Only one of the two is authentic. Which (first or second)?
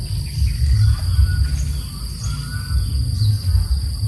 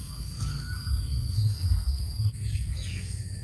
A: first